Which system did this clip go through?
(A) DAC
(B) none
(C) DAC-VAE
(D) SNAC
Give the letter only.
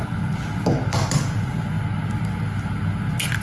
B